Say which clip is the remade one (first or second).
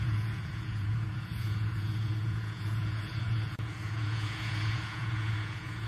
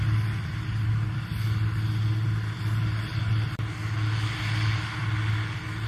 first